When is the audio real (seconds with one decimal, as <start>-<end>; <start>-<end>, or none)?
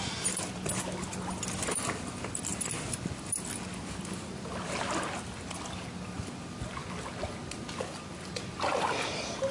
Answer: 0.0-9.5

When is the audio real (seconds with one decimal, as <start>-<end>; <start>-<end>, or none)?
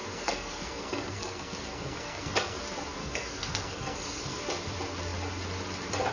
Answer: 2.6-3.0; 4.4-6.1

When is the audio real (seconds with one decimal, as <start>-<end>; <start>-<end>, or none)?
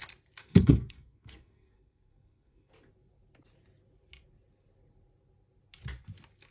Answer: 0.0-0.4; 2.7-6.5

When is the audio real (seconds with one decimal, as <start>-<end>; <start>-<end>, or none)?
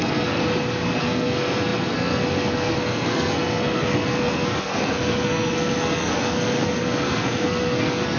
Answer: 0.4-1.0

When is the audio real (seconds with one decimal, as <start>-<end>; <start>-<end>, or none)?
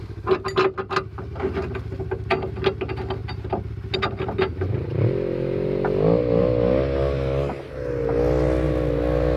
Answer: 0.0-3.2; 3.7-4.5; 6.4-9.4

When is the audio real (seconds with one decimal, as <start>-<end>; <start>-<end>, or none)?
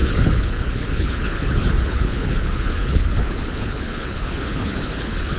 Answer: none